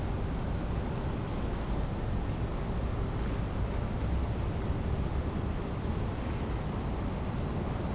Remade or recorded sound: recorded